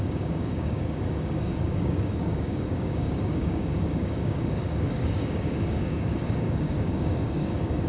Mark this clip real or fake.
fake